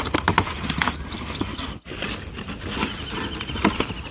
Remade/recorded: recorded